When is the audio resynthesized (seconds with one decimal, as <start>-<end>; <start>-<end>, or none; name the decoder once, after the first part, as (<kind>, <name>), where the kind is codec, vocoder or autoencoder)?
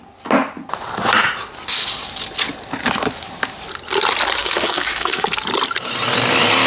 4.4-5.3 (codec, DAC)